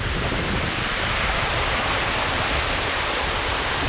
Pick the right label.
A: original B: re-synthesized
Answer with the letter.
A